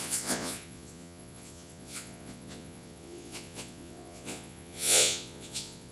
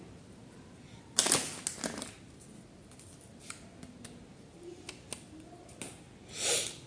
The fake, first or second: first